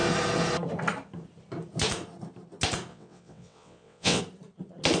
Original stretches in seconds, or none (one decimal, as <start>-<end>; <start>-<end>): 0.0-2.9; 4.2-5.0